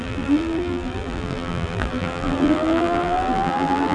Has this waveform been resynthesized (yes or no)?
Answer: yes